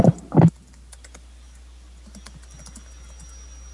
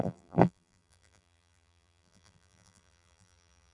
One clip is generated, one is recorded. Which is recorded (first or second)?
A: first